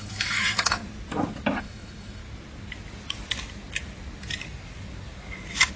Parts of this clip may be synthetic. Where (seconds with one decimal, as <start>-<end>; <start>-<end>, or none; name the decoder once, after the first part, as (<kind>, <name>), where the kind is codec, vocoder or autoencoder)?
0.0-0.8 (autoencoder, DAC-VAE); 1.6-2.2